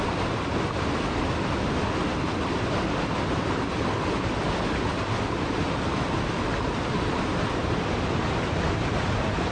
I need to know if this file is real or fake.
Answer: fake